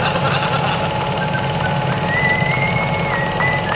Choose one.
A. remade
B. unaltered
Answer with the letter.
B